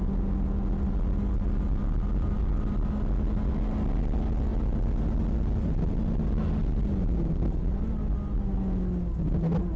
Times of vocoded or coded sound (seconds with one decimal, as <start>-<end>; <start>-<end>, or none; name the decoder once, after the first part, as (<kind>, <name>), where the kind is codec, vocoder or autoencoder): none